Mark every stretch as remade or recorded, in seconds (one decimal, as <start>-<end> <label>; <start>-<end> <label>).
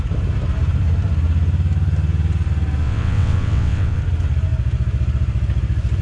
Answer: 0.0-2.8 recorded; 2.8-4.0 remade; 4.0-6.0 recorded